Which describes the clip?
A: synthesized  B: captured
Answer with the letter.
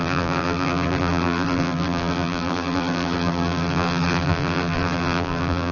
A